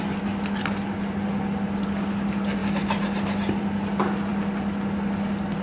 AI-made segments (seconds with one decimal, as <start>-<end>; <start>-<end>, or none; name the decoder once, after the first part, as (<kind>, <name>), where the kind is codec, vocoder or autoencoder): 2.6-3.6 (vocoder, BigVGAN v2)